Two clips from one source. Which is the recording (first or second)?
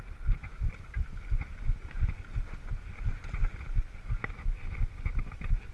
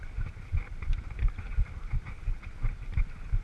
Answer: first